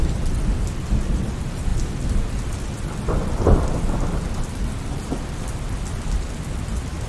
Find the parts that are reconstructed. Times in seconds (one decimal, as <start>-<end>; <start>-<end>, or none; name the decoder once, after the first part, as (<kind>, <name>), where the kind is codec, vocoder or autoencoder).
none